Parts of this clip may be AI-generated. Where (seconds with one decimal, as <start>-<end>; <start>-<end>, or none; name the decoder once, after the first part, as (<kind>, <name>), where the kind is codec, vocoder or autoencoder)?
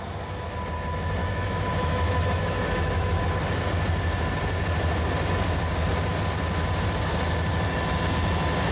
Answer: 1.2-3.2 (autoencoder, DAC-VAE)